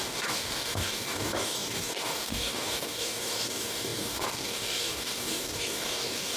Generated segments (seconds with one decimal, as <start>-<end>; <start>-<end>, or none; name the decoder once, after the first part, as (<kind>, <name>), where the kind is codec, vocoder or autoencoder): 0.0-6.4 (codec, DAC)